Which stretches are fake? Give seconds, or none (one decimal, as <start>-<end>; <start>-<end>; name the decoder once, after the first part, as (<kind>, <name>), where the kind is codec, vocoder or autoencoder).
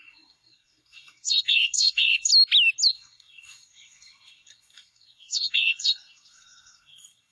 0.0-2.3 (codec, SNAC); 2.9-7.3